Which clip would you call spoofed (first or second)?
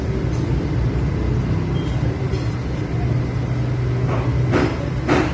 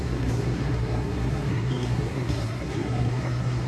second